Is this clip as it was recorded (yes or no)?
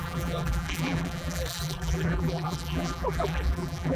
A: no